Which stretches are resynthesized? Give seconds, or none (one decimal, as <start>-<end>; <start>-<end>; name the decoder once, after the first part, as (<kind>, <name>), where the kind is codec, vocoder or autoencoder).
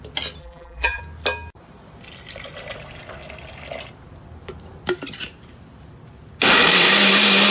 0.4-1.0 (vocoder, BigVGAN v2)